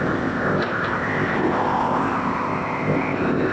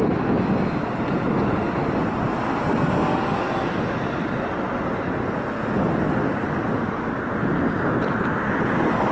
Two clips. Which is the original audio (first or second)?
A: second